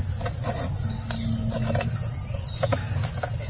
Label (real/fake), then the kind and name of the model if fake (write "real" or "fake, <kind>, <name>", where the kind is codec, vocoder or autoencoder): real